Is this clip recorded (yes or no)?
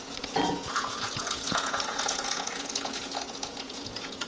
no